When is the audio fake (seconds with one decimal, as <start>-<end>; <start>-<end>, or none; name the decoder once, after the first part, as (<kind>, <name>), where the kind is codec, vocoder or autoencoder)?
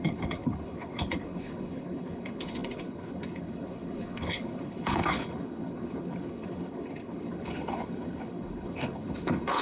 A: 0.0-9.6 (codec, HILCodec)